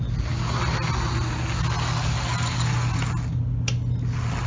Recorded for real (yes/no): yes